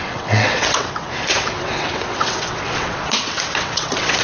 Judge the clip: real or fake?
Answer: fake